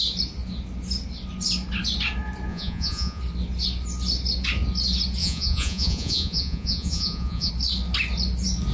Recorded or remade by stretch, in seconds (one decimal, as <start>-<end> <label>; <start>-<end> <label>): 0.0-2.5 recorded; 2.5-3.2 remade; 3.2-5.2 recorded; 5.2-7.5 remade; 7.5-8.7 recorded